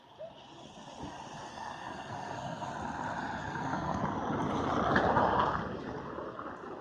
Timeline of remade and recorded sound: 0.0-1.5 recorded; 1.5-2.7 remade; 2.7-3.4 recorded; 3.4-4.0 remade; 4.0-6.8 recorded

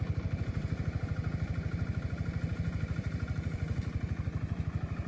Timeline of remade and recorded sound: 0.0-1.7 recorded; 1.7-4.1 remade; 4.1-5.1 recorded

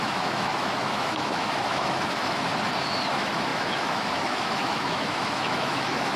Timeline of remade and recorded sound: 0.0-2.5 remade; 2.5-3.1 recorded; 3.1-6.2 remade

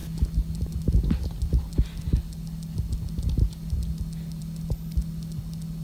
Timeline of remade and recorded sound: 0.0-5.8 recorded